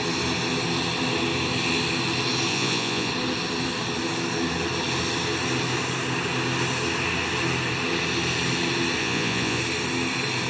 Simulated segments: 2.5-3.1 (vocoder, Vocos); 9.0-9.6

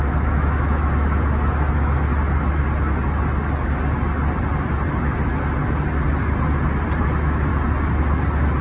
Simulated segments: 0.0-2.1 (autoencoder, DAC-VAE); 7.0-7.5

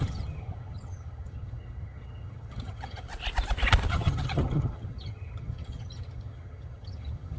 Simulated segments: 0.0-3.1 (vocoder, HiFi-GAN); 3.9-7.4